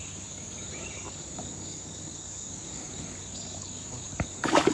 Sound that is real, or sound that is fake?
fake